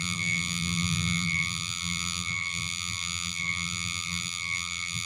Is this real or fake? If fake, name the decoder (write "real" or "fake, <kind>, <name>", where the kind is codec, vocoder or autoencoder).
fake, vocoder, BigVGAN v2